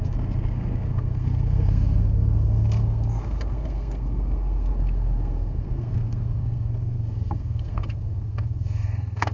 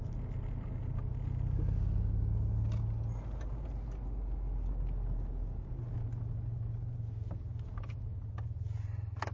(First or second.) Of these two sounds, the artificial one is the first